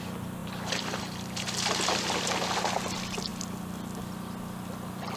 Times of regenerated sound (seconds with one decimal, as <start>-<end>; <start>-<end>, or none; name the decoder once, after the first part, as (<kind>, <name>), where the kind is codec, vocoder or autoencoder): 0.4-1.0 (vocoder, BigVGAN v2)